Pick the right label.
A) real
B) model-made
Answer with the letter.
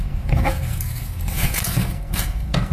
B